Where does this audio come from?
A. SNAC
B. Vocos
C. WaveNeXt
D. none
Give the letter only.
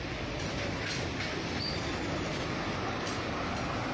D